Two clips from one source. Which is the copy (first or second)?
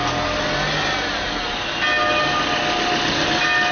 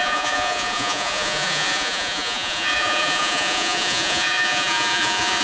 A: second